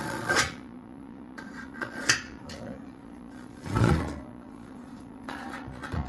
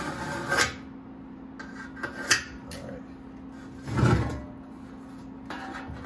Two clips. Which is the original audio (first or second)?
second